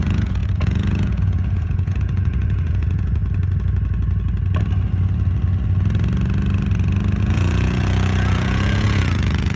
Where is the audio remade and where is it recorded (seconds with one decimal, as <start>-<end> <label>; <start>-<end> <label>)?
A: 0.0-3.2 remade; 3.2-7.2 recorded; 7.2-9.6 remade